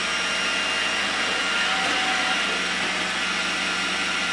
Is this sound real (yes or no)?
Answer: yes